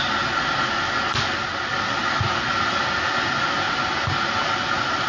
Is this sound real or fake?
real